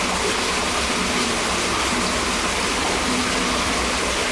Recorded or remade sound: recorded